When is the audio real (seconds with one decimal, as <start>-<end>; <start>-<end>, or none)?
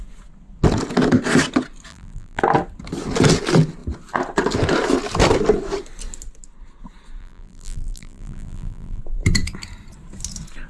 0.0-1.9; 2.4-7.2; 9.0-10.7